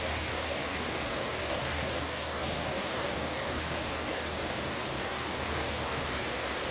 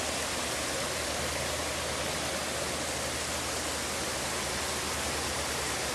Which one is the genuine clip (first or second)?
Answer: second